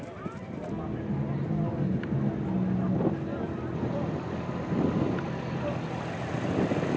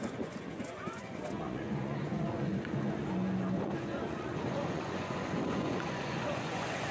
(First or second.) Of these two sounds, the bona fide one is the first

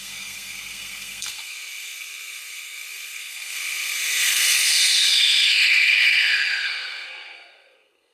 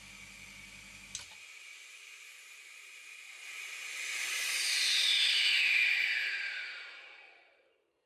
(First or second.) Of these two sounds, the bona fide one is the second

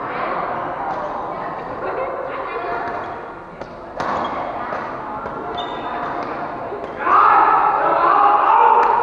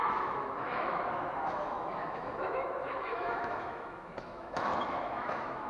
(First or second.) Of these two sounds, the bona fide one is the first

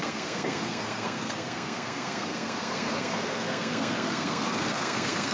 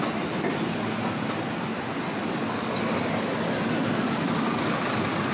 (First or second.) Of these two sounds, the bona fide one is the second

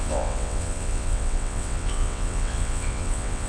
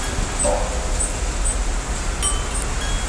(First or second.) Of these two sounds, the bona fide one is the second